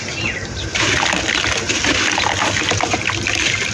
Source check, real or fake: real